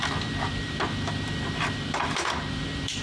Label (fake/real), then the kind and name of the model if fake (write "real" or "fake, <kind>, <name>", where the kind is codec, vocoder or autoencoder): fake, vocoder, BigVGAN v2